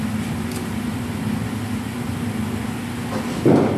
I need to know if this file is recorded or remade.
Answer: recorded